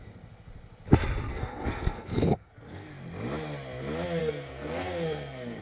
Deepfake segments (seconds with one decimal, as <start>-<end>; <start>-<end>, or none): 1.3-2.9; 4.2-5.6